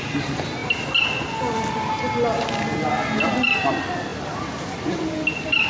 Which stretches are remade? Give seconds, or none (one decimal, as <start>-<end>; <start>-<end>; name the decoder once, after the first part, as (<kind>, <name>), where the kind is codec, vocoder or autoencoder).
none